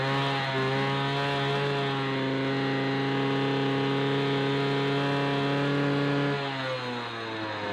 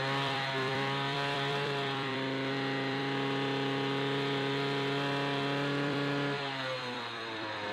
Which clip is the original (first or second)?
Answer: first